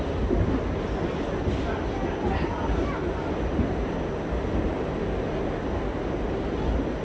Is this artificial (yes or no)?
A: no